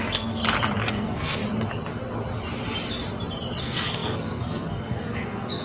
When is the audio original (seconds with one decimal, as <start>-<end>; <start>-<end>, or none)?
0.4-0.9; 1.4-3.6